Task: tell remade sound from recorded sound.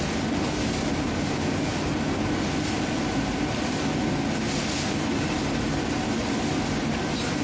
recorded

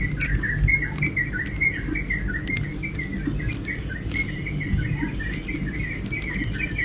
recorded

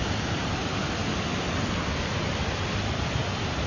recorded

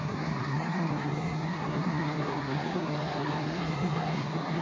remade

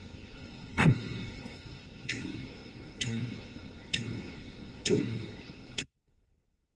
remade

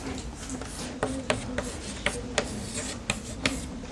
recorded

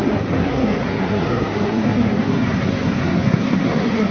remade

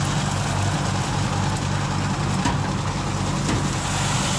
recorded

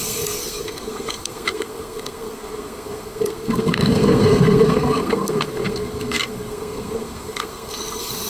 remade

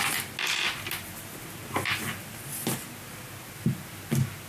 recorded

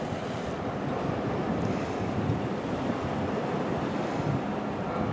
recorded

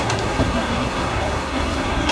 remade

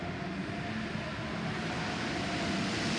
recorded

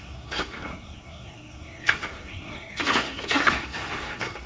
remade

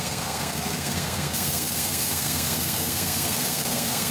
remade